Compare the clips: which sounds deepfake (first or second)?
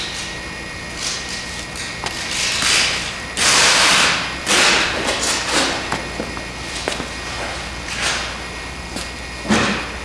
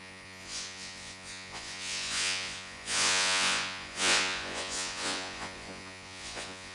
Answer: second